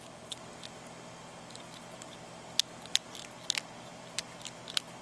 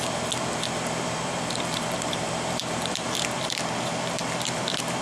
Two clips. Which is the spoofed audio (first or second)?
second